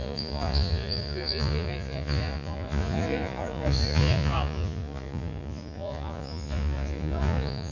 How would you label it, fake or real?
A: fake